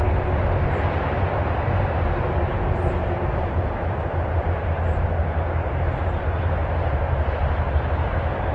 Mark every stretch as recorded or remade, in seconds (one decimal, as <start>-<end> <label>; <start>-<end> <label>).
0.0-3.0 recorded; 3.0-3.8 remade; 3.8-8.5 recorded

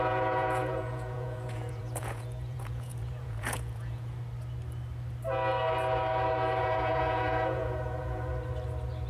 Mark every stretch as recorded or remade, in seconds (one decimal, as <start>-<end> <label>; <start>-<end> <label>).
0.0-4.1 remade; 4.1-6.6 recorded; 6.6-8.3 remade; 8.3-9.1 recorded

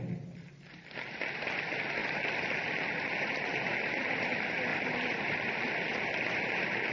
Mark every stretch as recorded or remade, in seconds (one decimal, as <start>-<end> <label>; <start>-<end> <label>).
0.0-2.0 recorded; 2.0-3.7 remade; 3.7-4.7 recorded; 4.7-6.4 remade; 6.4-6.9 recorded